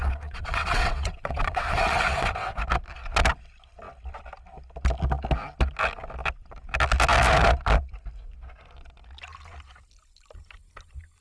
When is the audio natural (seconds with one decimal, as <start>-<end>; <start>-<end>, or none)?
2.6-11.2